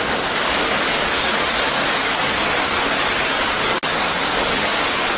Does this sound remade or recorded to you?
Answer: remade